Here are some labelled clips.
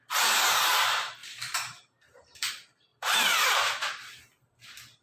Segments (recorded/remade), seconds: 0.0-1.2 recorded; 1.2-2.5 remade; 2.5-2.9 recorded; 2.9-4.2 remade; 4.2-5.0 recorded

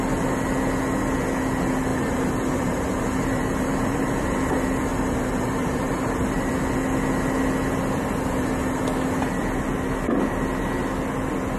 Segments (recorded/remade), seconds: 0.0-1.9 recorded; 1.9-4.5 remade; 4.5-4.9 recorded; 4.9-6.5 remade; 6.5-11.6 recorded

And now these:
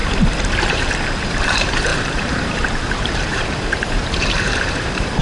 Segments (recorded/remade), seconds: 0.0-0.6 recorded; 0.6-5.2 remade

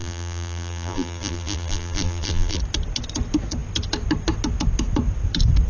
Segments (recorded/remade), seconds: 0.0-2.6 remade; 2.6-5.7 recorded